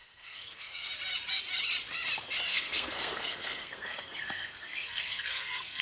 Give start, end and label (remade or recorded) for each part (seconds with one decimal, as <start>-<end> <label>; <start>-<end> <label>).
0.0-0.9 remade; 0.9-2.5 recorded; 2.5-5.8 remade